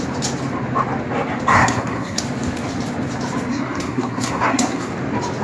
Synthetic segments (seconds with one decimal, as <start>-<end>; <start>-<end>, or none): 1.5-2.2; 3.5-4.9